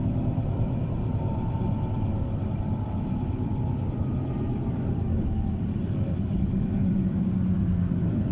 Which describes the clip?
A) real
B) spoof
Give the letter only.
B